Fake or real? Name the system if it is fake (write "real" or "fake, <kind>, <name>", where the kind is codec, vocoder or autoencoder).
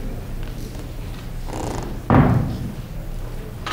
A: real